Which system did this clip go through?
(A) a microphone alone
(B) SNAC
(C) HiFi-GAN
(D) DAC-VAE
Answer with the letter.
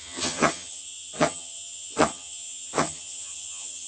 C